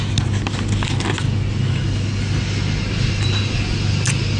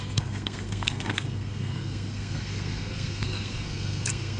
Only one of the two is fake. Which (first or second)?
second